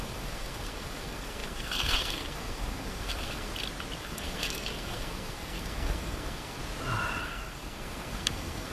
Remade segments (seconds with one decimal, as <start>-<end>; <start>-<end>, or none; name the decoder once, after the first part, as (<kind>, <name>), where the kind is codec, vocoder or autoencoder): 0.0-3.5 (codec, SNAC); 4.0-6.6; 7.2-8.7